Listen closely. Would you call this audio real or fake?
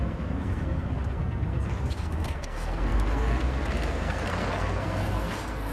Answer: fake